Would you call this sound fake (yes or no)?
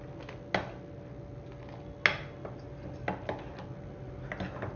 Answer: no